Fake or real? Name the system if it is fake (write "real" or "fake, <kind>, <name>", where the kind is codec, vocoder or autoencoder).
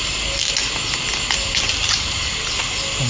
real